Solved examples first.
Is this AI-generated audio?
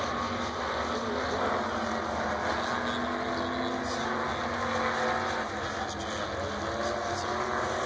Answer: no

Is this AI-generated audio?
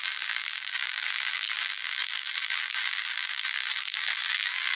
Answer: yes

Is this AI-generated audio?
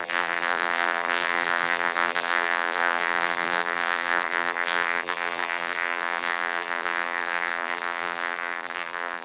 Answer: yes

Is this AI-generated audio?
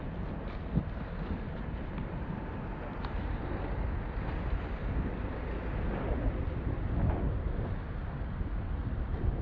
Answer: no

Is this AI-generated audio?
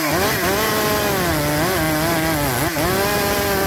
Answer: no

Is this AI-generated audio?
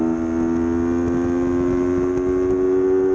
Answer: no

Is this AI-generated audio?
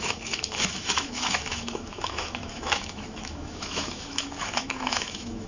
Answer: yes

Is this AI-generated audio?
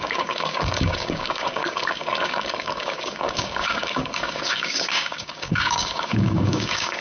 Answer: yes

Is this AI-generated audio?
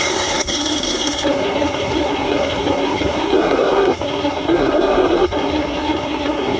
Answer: yes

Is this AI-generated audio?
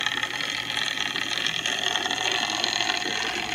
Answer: no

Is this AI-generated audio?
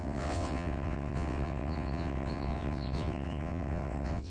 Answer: yes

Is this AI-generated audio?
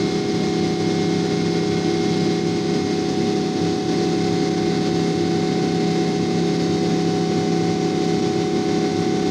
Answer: no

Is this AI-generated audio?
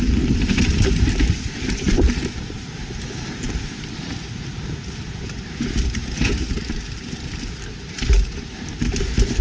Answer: yes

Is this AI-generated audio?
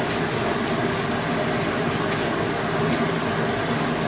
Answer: no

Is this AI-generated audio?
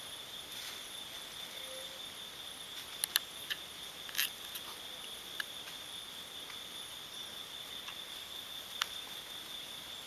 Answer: no